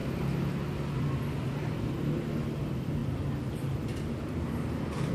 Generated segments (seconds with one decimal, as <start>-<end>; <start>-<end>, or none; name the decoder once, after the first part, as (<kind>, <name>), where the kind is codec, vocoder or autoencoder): none

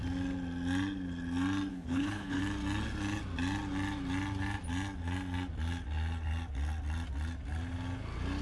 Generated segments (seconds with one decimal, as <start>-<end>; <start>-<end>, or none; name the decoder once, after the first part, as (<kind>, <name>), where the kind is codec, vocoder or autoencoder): 1.7-2.4 (codec, HILCodec)

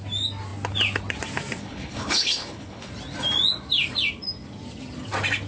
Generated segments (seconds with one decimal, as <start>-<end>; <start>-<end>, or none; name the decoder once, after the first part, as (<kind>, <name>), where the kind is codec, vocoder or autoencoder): 1.6-2.9 (codec, HILCodec)

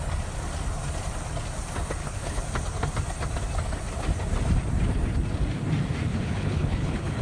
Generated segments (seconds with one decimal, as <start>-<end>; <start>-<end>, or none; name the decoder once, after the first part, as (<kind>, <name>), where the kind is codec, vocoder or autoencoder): 2.0-2.5 (codec, HILCodec); 6.1-7.2